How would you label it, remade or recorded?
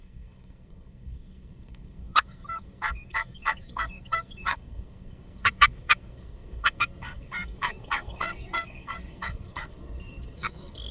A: remade